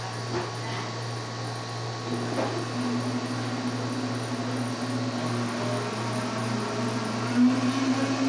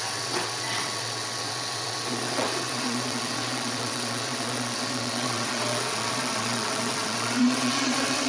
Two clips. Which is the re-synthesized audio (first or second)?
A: second